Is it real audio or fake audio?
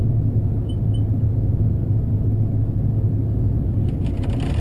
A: real